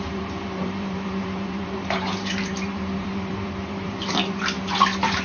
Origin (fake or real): fake